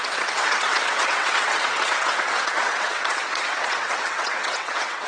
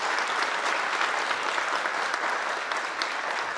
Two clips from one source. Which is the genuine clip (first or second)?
second